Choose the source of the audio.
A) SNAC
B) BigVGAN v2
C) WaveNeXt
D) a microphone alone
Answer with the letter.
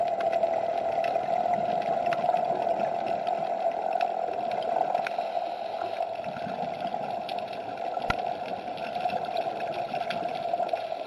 D